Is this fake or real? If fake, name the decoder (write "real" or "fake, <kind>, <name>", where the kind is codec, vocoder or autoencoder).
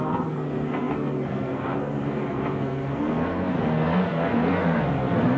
fake, codec, SNAC